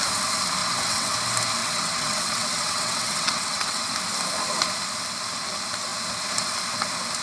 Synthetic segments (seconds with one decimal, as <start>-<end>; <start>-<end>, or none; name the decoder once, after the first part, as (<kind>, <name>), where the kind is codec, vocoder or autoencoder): 0.6-1.1 (vocoder, WaveNeXt); 1.6-3.9